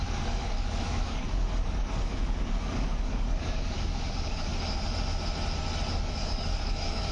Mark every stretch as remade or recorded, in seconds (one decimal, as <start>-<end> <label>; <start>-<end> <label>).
0.0-4.5 remade; 4.5-5.9 recorded; 5.9-7.1 remade